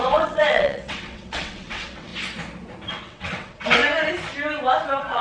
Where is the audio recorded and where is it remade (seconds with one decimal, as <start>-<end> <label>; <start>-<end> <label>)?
0.0-2.1 remade; 2.1-2.9 recorded; 2.9-3.8 remade; 3.8-4.8 recorded; 4.8-5.2 remade